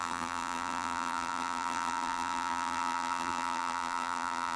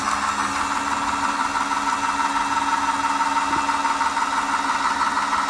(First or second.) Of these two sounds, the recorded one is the second